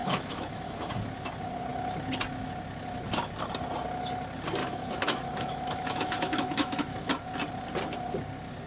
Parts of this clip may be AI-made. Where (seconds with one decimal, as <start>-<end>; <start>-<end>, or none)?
0.0-0.9; 4.6-7.1